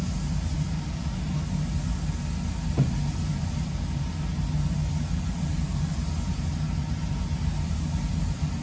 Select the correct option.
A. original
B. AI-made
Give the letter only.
A